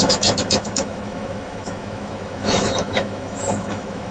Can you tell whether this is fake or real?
fake